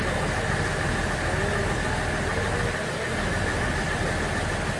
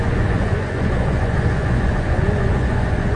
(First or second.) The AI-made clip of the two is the second